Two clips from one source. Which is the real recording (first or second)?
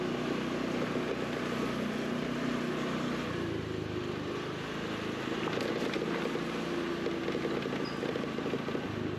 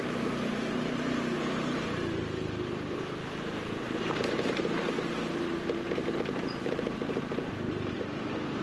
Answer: first